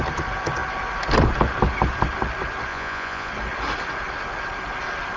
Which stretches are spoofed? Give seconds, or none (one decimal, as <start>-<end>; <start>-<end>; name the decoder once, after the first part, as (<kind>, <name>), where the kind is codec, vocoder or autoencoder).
2.7-3.3 (vocoder, Vocos)